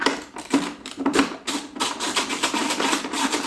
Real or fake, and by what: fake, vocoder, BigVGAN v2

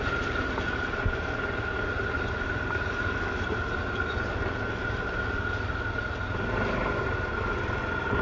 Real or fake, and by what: real